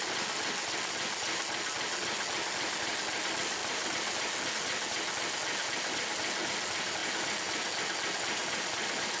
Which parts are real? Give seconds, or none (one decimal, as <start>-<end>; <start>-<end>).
0.0-9.2